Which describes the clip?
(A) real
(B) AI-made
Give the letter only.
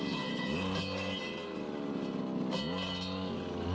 A